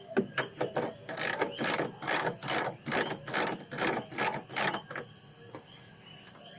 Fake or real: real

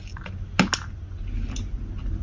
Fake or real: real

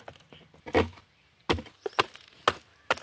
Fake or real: real